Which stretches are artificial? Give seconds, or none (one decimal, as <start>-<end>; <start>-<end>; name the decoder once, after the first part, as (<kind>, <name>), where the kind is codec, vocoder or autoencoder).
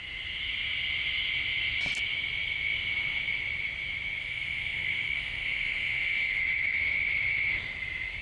4.2-6.4 (codec, SNAC)